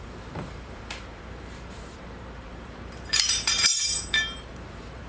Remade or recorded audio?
remade